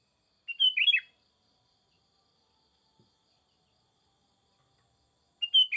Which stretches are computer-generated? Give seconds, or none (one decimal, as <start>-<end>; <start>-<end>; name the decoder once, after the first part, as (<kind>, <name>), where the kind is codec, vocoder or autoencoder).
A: none